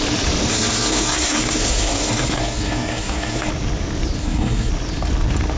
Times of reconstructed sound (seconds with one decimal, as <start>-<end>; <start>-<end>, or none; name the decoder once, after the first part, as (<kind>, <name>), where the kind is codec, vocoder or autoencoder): 0.5-3.5 (codec, SNAC); 4.2-4.7